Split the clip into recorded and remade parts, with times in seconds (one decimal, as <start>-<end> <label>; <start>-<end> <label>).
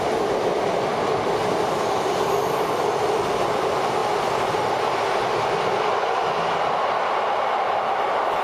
0.0-8.4 recorded